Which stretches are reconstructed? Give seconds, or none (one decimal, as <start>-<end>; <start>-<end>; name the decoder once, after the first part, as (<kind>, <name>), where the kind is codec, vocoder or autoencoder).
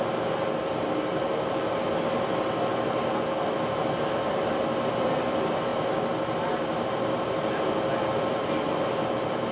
none